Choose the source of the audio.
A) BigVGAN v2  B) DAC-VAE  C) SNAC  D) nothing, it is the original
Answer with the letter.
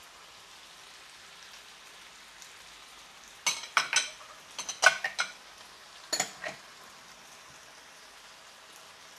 D